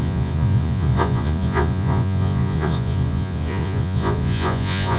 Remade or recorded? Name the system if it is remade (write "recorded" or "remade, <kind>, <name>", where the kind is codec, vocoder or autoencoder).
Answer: remade, vocoder, Vocos